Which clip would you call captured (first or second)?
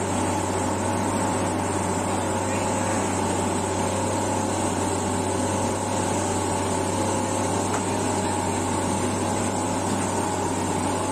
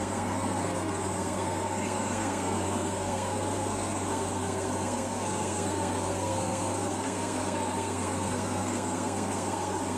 first